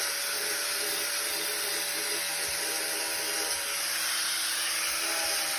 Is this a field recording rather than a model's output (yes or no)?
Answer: yes